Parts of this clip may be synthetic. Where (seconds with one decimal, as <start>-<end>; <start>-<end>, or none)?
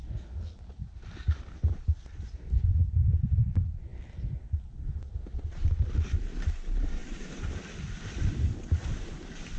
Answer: none